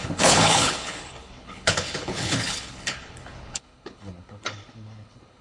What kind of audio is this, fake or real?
fake